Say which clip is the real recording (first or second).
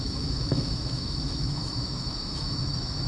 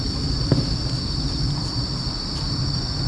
second